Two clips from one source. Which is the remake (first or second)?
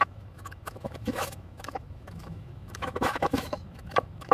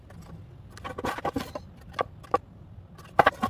first